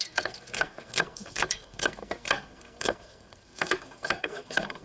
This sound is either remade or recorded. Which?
remade